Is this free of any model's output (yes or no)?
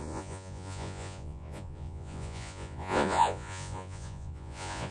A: no